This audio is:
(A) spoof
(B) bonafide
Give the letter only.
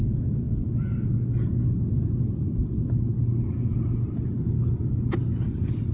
B